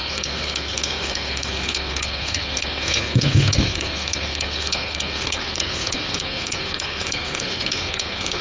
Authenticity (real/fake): fake